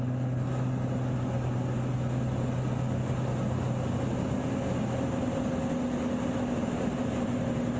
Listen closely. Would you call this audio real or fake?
real